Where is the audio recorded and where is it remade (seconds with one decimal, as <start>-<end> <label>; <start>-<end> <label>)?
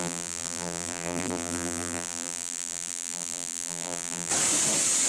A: 0.0-4.3 remade; 4.3-5.1 recorded